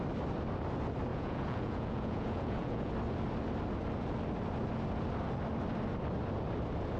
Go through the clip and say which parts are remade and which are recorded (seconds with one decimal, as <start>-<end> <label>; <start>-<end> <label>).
0.0-1.1 recorded; 1.1-2.9 remade; 2.9-7.0 recorded